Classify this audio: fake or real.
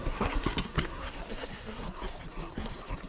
fake